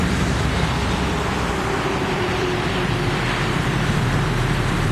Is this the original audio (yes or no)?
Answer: no